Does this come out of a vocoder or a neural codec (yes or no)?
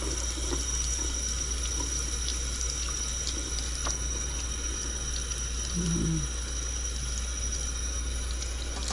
no